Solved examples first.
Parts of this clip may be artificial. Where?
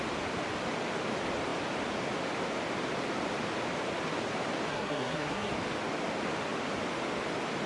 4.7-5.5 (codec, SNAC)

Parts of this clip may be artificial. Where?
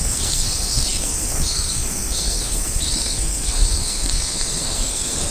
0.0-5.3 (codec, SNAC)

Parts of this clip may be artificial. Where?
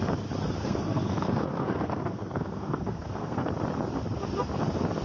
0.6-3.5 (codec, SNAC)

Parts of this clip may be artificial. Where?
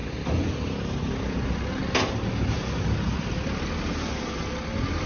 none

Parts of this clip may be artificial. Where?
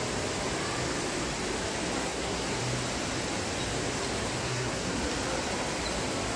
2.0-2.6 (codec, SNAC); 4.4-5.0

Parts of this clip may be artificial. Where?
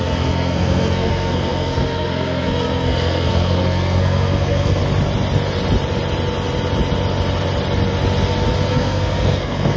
0.0-4.8 (codec, SNAC); 8.7-9.8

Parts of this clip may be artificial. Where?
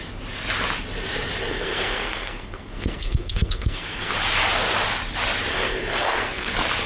1.5-4.1 (codec, SNAC); 5.5-6.5